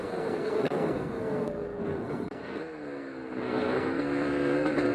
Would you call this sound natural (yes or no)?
no